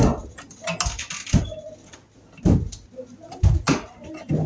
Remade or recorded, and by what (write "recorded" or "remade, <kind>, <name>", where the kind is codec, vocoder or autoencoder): recorded